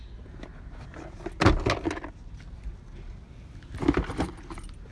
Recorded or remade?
recorded